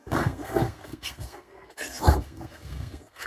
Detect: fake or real fake